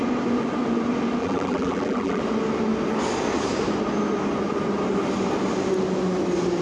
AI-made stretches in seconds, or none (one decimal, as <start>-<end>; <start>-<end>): 1.2-2.2